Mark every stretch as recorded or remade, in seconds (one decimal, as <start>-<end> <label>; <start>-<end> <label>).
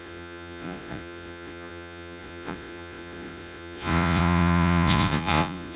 0.0-5.8 remade